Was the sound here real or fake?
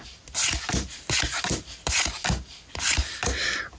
real